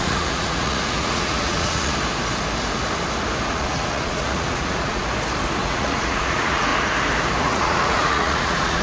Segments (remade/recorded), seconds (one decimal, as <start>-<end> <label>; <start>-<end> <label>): 0.0-1.9 remade; 1.9-3.5 recorded; 3.5-5.0 remade; 5.0-5.6 recorded; 5.6-6.7 remade; 6.7-7.4 recorded; 7.4-8.8 remade